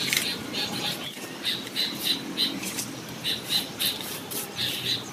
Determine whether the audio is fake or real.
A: fake